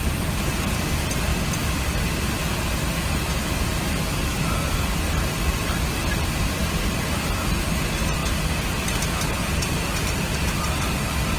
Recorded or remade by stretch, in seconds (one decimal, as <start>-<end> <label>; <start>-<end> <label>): 0.0-11.4 recorded